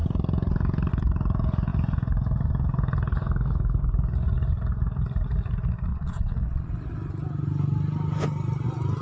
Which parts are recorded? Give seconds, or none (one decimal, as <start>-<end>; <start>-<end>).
0.0-5.9; 6.7-9.0